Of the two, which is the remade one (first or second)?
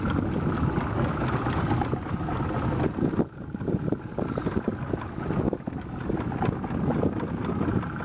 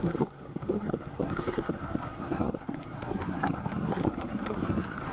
second